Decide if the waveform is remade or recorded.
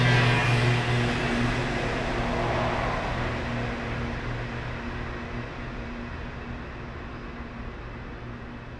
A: recorded